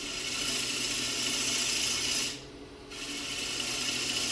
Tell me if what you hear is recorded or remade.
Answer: recorded